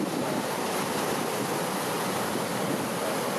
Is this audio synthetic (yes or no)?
no